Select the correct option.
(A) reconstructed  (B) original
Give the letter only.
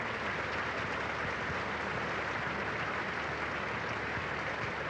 B